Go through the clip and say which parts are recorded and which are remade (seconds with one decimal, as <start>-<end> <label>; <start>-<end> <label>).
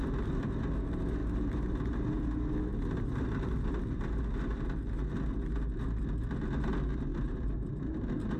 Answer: 0.0-1.2 recorded; 1.2-2.2 remade; 2.2-2.7 recorded; 2.7-3.7 remade; 3.7-7.1 recorded; 7.1-8.4 remade